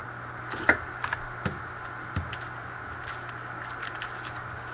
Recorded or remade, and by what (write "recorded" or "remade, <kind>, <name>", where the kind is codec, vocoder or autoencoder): recorded